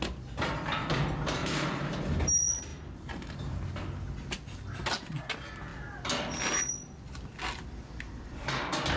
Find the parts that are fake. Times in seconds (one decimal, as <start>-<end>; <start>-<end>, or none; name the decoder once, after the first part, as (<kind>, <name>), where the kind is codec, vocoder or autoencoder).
1.4-1.9 (vocoder, BigVGAN v2); 2.7-3.7

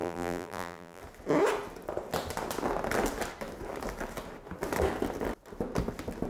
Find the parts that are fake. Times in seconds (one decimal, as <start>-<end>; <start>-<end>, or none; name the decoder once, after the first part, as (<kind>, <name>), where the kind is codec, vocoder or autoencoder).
0.0-1.0 (vocoder, BigVGAN v2)

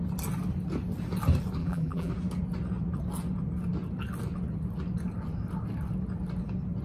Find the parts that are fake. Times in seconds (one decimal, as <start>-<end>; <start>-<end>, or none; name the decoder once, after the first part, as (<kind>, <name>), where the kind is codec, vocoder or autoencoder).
1.6-2.1 (vocoder, BigVGAN v2)

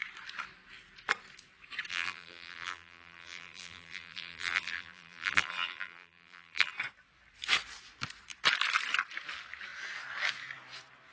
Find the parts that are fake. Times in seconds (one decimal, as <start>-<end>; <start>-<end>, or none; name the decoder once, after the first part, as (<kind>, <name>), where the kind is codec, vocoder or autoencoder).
1.9-6.7 (vocoder, BigVGAN v2)